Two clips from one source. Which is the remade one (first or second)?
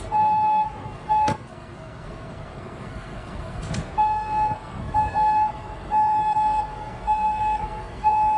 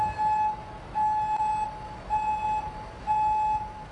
first